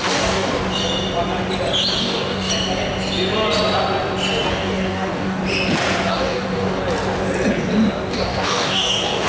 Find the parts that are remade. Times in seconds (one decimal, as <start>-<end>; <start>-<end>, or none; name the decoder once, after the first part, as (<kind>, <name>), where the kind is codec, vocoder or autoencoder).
0.0-0.5 (codec, DAC); 2.0-2.5; 4.5-5.4; 6.1-6.8; 8.1-9.3